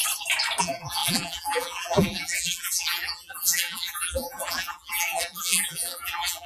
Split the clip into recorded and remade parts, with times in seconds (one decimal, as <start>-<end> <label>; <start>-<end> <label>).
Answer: 0.0-0.6 recorded; 0.6-6.5 remade